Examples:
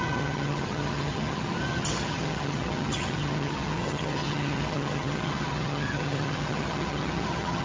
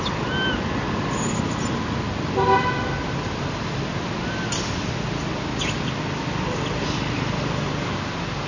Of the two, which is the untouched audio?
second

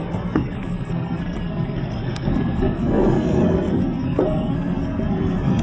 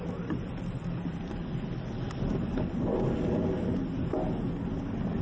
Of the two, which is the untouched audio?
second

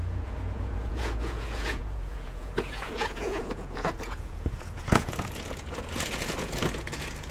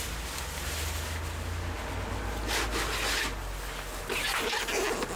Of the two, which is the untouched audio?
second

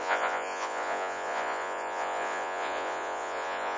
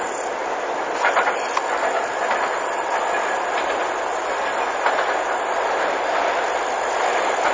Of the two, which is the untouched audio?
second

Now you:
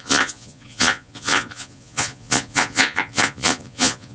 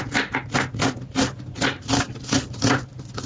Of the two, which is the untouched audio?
second